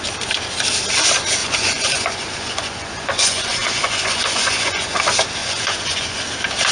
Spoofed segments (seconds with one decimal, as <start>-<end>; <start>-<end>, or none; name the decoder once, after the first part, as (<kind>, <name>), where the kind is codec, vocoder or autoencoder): 1.4-5.0 (vocoder, Vocos); 5.4-6.2